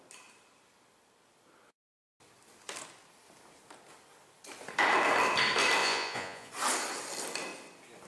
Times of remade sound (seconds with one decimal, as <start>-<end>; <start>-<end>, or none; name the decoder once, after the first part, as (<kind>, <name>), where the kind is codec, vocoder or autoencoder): 5.8-6.5 (vocoder, Vocos)